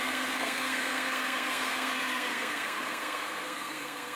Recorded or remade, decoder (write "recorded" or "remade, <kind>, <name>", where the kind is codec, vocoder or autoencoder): remade, codec, SNAC